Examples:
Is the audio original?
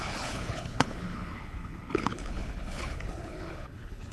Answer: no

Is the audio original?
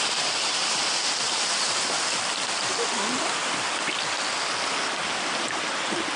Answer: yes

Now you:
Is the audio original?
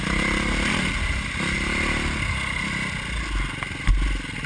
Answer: yes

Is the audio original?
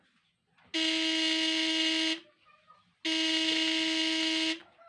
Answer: yes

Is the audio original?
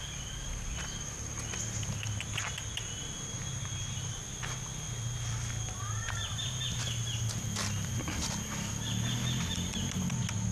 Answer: yes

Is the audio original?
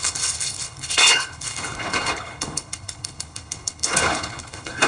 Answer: no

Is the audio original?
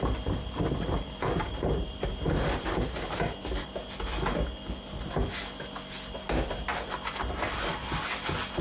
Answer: yes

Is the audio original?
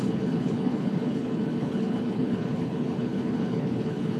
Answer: no